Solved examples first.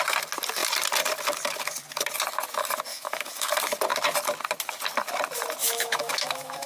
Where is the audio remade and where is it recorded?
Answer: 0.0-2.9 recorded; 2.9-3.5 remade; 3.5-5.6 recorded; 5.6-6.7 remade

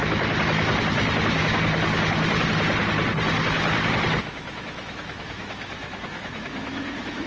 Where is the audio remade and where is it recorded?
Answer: 0.0-4.2 recorded; 4.2-7.3 remade

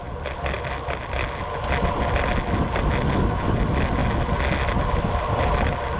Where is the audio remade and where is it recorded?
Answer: 0.0-6.0 recorded

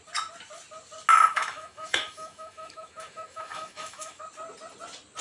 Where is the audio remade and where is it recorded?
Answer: 0.0-1.1 recorded; 1.1-4.2 remade; 4.2-5.2 recorded

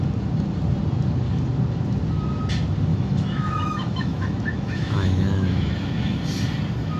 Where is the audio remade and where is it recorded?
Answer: 0.0-2.9 recorded; 2.9-6.2 remade; 6.2-7.0 recorded

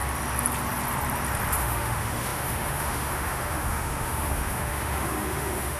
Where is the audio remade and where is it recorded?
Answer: 0.0-1.6 recorded; 1.6-5.8 remade

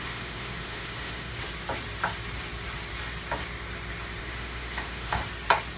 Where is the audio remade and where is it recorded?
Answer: 0.0-1.3 remade; 1.3-4.2 recorded; 4.2-5.2 remade; 5.2-5.8 recorded

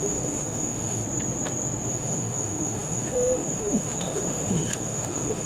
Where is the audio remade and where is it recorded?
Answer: 0.0-1.0 remade; 1.0-1.9 recorded; 1.9-5.5 remade